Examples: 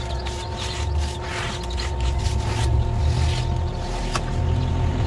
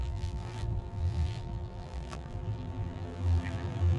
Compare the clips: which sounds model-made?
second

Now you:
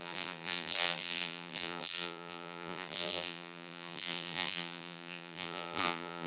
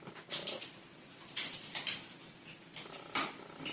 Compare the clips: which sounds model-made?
first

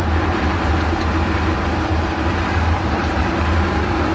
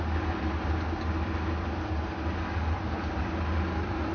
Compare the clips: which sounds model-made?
first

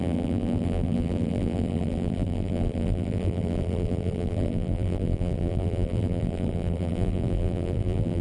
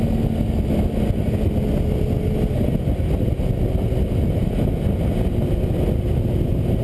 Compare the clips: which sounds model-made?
first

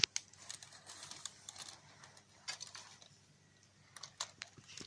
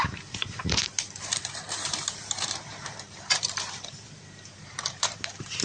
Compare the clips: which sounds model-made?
second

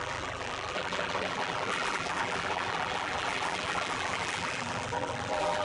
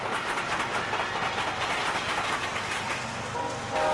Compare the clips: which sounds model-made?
first